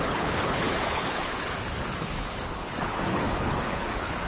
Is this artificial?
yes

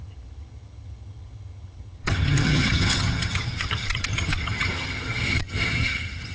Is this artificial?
yes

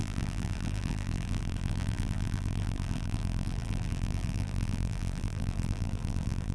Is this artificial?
yes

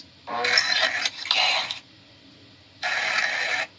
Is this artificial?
no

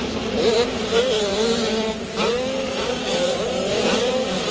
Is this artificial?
yes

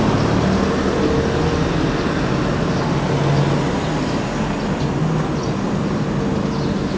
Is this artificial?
no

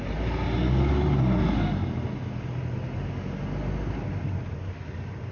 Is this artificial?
no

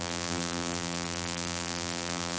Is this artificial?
yes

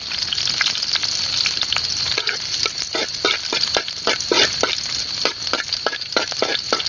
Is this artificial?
no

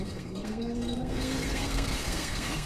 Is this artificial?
yes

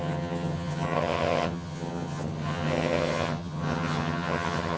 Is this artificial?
yes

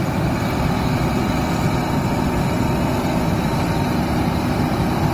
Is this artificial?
no